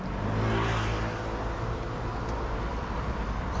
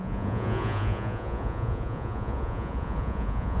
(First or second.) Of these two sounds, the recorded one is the first